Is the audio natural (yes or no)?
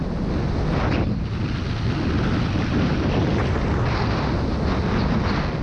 yes